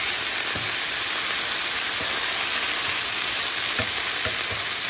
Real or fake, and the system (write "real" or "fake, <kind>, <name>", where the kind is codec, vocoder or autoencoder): real